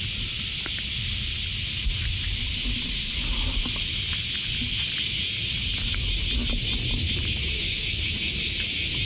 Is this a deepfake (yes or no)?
no